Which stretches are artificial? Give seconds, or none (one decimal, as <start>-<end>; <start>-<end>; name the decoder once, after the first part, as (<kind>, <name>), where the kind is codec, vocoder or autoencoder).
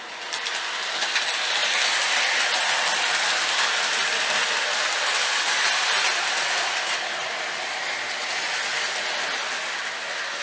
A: none